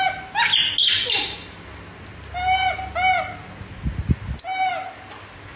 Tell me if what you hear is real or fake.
real